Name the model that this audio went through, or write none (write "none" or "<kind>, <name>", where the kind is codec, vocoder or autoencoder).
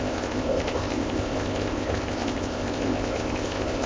codec, ZipCodec